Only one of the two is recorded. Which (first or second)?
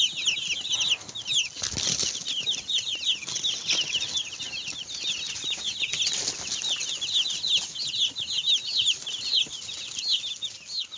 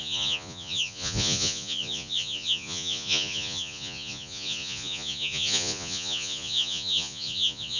first